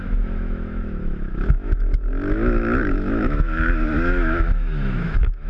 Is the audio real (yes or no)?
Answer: no